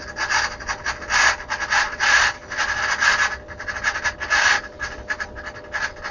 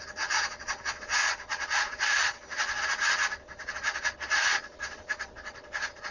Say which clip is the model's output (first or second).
second